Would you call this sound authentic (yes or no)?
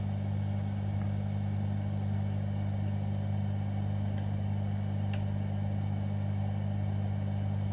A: yes